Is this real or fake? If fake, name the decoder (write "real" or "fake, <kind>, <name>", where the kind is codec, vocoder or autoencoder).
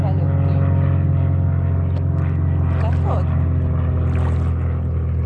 real